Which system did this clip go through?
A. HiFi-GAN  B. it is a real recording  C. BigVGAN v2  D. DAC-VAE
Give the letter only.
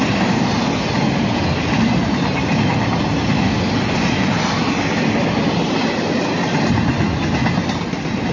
B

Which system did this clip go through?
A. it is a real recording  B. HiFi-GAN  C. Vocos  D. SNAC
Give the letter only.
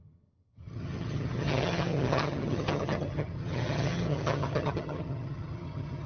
B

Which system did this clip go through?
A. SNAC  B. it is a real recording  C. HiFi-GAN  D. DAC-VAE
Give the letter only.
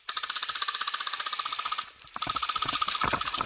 B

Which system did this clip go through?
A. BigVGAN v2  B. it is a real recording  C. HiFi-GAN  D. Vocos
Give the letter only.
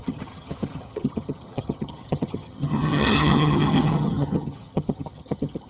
C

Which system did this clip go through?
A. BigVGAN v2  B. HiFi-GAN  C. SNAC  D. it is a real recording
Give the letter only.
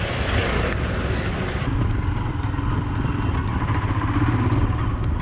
D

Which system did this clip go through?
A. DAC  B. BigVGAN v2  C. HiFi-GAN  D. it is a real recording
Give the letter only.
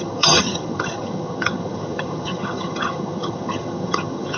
C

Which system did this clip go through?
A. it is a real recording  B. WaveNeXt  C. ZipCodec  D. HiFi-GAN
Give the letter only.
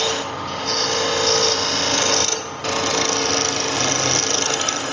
A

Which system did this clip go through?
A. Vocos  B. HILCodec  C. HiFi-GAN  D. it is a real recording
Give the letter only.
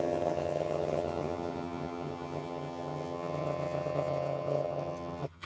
C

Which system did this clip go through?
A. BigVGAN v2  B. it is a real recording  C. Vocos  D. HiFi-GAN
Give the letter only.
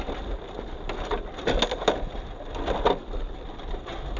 B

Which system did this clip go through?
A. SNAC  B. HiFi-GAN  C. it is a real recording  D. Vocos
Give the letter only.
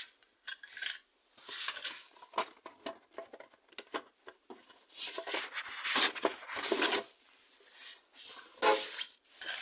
C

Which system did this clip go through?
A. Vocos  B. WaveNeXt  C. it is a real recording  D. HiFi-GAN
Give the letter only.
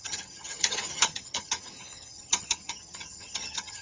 D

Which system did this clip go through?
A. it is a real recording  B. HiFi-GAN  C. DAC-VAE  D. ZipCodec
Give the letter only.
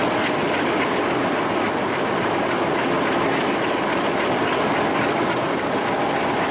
A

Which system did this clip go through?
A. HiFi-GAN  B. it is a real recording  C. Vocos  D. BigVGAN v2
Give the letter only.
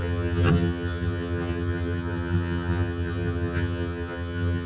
A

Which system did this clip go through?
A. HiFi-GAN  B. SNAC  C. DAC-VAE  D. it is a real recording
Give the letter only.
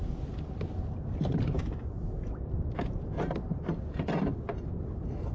D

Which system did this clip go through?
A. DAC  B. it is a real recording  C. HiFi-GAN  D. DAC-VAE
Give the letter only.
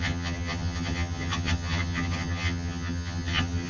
C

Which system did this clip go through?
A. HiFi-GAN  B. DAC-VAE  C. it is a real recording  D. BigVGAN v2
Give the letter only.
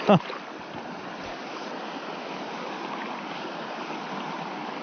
C